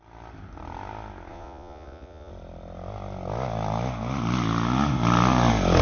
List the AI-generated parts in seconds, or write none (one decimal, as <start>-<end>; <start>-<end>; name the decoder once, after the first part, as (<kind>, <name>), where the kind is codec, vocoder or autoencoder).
1.3-2.3 (vocoder, Vocos)